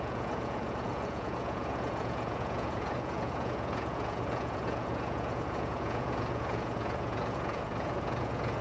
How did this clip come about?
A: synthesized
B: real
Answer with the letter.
A